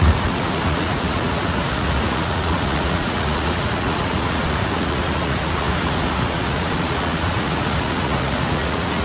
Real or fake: fake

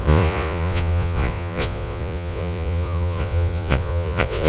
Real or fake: fake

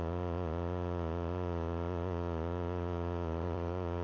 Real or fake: fake